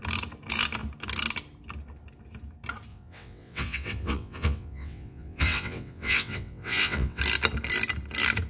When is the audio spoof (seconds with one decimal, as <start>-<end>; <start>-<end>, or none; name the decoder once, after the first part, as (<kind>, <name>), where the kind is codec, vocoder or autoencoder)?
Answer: 2.9-7.2 (vocoder, WaveNeXt)